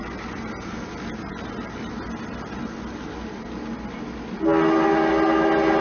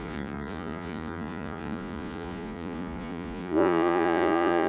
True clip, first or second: first